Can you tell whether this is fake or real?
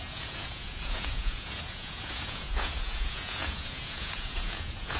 fake